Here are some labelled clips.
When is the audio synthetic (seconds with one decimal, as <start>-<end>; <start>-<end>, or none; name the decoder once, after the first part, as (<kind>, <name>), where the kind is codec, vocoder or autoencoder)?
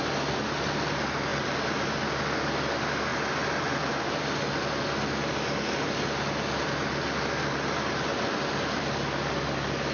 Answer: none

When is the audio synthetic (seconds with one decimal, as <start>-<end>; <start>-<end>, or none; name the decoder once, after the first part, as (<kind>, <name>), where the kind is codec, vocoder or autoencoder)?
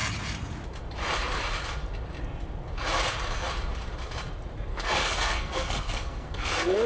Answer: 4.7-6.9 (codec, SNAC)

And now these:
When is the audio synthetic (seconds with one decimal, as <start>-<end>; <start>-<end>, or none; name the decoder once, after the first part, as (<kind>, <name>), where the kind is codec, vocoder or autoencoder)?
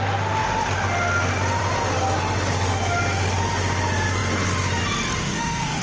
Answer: 5.2-5.8 (autoencoder, DAC-VAE)